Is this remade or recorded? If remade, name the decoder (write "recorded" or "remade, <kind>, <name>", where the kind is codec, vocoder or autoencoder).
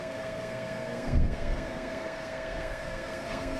remade, codec, SNAC